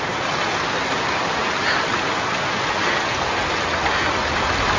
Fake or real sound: real